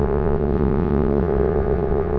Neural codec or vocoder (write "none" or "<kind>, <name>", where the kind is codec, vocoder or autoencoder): vocoder, WaveNeXt